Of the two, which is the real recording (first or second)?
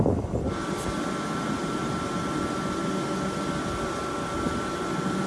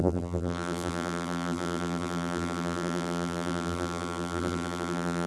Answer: first